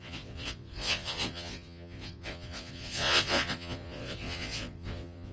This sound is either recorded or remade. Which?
remade